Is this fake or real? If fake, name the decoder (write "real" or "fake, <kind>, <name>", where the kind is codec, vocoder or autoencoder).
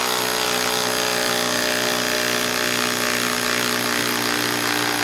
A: real